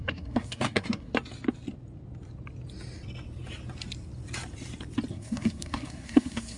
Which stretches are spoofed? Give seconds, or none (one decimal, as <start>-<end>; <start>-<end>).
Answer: 0.0-1.1; 5.1-6.6